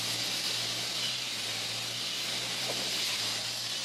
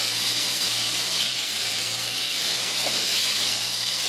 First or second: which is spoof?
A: second